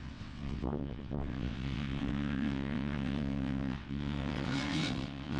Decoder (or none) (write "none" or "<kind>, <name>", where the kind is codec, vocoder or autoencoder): vocoder, WaveNeXt